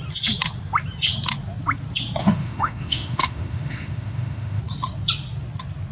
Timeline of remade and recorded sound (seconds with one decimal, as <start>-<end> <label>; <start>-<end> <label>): 0.0-2.2 recorded; 2.2-4.6 remade; 4.6-5.9 recorded